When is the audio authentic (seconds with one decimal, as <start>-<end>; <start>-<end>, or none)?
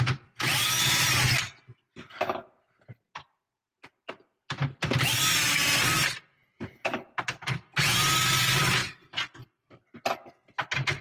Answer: 0.0-11.0